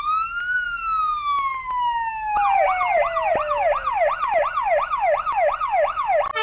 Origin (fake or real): real